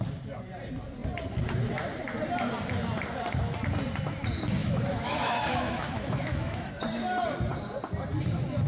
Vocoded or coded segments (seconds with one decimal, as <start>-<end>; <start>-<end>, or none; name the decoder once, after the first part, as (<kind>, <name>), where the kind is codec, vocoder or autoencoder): 4.6-6.7 (autoencoder, DAC-VAE)